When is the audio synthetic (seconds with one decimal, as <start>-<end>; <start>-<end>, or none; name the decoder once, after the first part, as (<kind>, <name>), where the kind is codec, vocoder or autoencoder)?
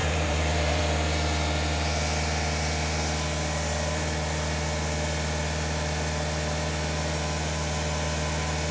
0.0-0.8 (vocoder, BigVGAN v2)